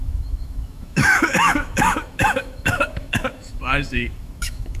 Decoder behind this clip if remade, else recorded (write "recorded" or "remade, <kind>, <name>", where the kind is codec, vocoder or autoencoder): remade, autoencoder, DAC-VAE